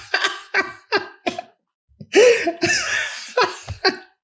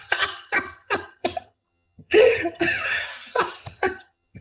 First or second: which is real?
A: first